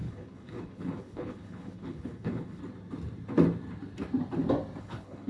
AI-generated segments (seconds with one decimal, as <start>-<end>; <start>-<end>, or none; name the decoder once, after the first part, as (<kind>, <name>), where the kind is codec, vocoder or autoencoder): 0.0-2.6 (codec, HILCodec); 4.8-5.3